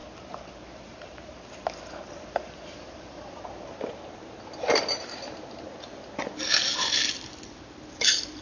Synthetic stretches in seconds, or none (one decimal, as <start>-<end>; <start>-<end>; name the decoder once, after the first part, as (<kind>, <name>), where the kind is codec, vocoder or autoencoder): 0.0-3.4 (vocoder, BigVGAN v2)